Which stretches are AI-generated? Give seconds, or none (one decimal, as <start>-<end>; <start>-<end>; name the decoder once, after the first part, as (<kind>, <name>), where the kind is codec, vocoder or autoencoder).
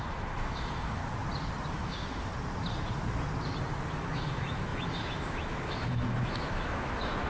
0.0-1.0 (autoencoder, DAC-VAE); 1.7-2.3; 3.9-7.3